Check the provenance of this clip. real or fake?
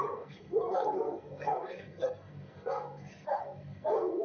fake